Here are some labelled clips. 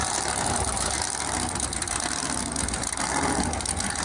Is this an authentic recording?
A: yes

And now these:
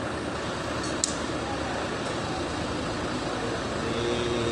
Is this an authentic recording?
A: yes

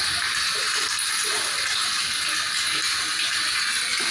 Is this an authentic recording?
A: yes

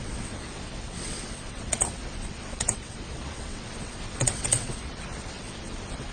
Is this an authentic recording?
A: no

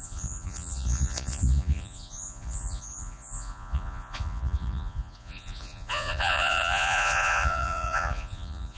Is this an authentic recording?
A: no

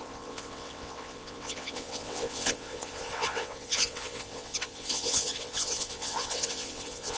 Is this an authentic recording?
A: no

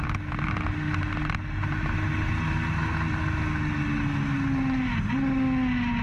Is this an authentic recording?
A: yes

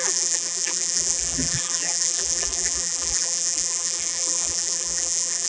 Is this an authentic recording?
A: no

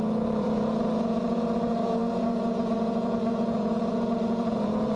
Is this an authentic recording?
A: no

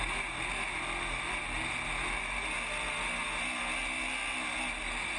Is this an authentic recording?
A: yes